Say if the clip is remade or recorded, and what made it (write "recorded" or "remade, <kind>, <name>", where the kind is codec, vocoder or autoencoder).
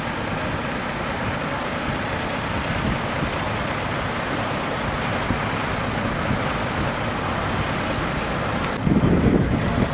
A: recorded